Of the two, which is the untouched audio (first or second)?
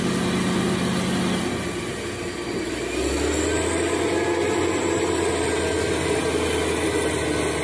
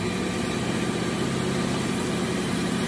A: first